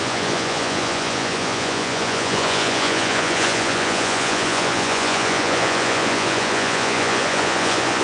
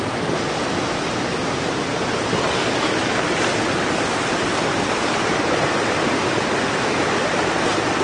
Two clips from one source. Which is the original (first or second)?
second